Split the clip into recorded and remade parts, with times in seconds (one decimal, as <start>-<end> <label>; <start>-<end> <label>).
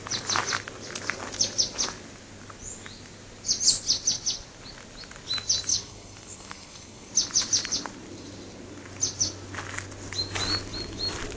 0.0-5.7 recorded; 5.7-7.1 remade; 7.1-11.4 recorded